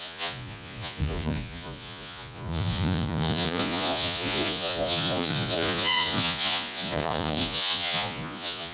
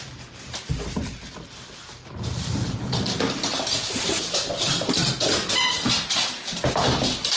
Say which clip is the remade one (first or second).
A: first